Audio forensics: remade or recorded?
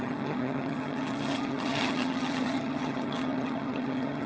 remade